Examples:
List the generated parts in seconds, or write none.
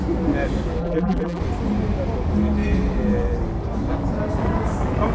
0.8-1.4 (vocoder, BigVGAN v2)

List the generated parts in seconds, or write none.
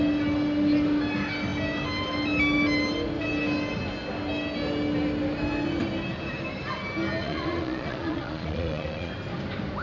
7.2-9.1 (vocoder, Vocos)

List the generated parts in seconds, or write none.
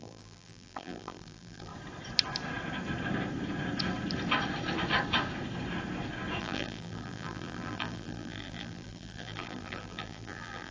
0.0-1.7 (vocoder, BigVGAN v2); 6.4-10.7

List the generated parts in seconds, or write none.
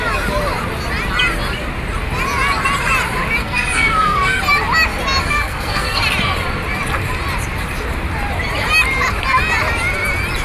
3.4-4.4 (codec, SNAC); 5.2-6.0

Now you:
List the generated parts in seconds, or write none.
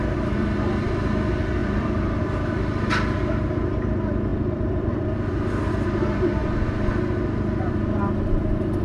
1.6-2.2 (vocoder, BigVGAN v2); 4.3-4.9